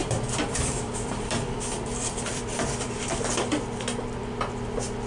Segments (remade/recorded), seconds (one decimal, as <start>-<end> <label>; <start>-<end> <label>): 0.0-3.1 remade; 3.1-5.1 recorded